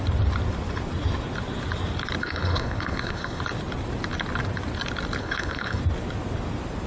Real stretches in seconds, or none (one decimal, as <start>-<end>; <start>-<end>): 0.0-2.2; 3.4-5.2; 5.8-6.9